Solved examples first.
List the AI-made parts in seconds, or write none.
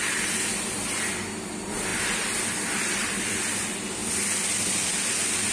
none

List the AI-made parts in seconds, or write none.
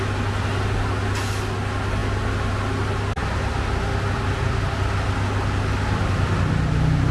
none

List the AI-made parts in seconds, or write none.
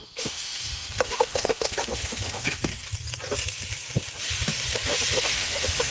0.0-2.7 (autoencoder, DAC-VAE); 5.2-5.9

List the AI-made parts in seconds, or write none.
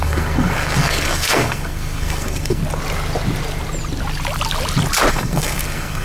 0.0-2.6 (codec, SNAC); 5.1-6.0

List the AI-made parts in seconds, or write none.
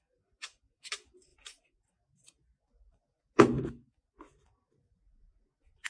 none